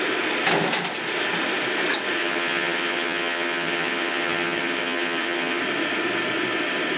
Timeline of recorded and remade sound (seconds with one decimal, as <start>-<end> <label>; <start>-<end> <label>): 0.0-2.2 recorded; 2.2-5.6 remade; 5.6-7.0 recorded